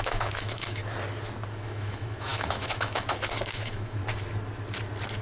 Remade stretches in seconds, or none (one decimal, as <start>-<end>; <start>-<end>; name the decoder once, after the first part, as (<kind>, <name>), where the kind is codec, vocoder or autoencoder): 0.0-0.8 (autoencoder, DAC-VAE); 1.5-4.0